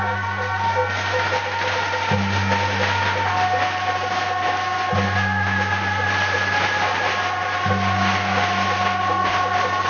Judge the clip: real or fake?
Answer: real